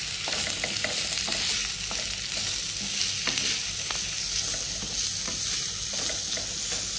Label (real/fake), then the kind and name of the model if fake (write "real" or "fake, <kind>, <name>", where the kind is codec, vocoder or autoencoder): real